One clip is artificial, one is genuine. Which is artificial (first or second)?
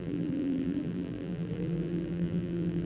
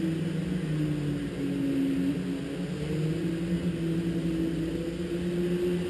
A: first